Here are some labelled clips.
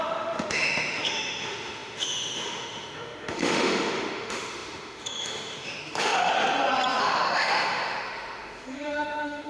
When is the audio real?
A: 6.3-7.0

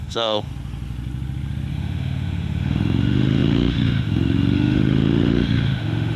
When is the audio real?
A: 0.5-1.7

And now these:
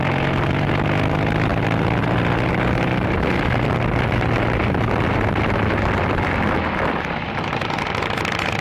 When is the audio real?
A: 0.0-8.6